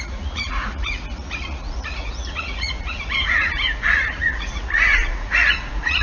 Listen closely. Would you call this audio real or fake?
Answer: fake